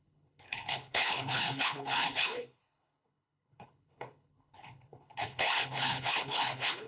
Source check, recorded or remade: remade